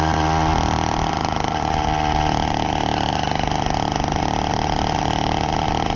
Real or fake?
real